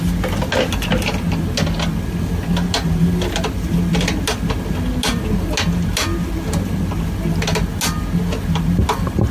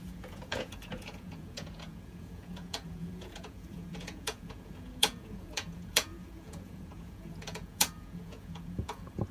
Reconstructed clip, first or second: second